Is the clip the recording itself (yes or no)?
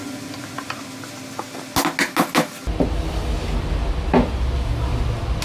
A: yes